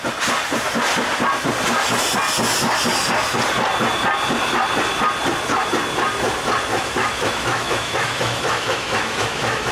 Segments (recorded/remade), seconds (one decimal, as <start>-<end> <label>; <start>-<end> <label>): 0.0-6.7 recorded; 6.7-9.7 remade